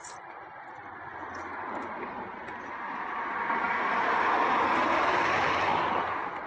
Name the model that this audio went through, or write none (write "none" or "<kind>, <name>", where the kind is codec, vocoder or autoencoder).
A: none